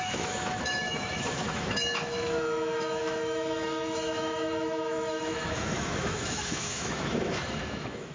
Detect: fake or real fake